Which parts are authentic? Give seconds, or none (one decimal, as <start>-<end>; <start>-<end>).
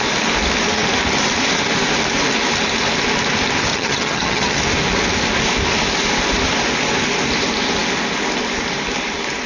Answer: 0.0-3.7; 4.6-9.5